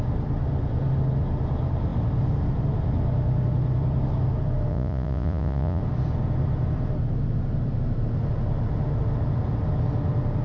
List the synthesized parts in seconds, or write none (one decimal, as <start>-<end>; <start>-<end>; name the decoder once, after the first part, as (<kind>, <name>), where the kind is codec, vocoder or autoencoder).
4.7-5.8 (vocoder, Vocos)